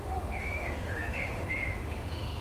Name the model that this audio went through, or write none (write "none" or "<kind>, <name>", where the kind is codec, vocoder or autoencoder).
autoencoder, DAC-VAE